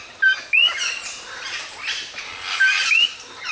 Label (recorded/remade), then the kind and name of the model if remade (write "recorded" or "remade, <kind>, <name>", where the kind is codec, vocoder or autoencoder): recorded